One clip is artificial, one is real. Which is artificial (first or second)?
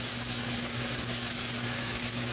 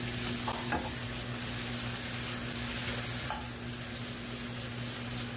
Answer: first